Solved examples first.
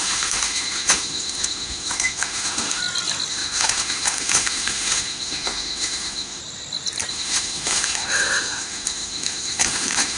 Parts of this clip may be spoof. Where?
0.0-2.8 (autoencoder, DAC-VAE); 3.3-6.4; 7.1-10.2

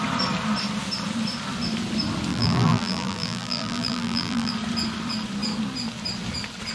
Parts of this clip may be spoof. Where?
2.3-4.5 (vocoder, BigVGAN v2)

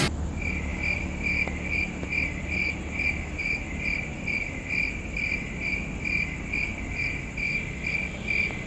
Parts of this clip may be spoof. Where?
none